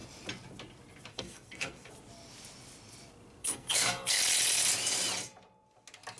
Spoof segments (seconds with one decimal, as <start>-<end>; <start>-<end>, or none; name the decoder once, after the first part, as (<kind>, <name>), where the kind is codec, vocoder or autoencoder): 1.1-1.9 (codec, SNAC); 3.4-4.2